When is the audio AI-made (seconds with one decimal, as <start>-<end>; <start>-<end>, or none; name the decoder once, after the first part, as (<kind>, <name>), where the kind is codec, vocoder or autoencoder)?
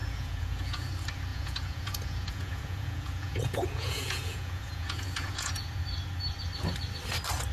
0.0-0.9 (vocoder, Vocos); 1.3-5.8